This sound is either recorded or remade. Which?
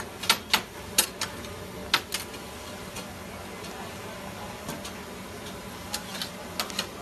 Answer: recorded